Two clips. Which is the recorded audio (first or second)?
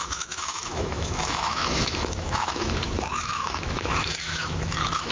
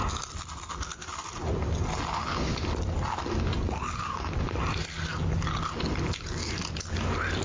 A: second